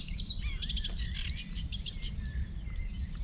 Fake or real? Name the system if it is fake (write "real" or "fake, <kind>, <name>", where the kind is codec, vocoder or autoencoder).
real